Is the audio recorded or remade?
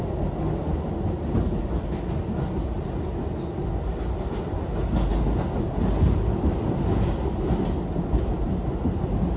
recorded